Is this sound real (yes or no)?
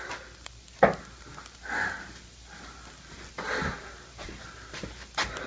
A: yes